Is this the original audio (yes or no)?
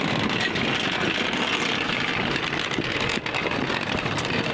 yes